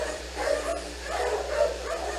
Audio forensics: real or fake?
fake